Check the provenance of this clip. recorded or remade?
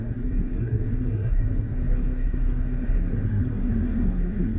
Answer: remade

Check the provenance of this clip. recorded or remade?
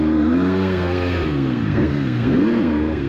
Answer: remade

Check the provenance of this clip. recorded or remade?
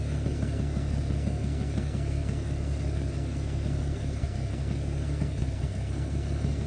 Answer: remade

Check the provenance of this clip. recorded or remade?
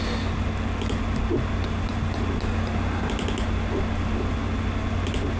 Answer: recorded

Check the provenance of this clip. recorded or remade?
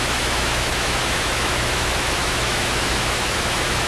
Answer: remade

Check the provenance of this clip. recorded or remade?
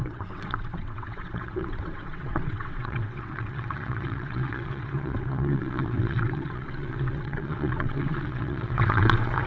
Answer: remade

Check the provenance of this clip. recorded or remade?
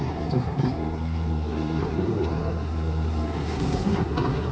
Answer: remade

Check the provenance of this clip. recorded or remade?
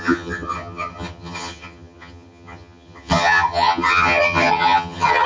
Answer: remade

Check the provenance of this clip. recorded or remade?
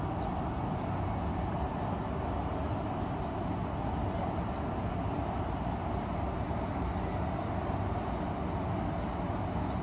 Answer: recorded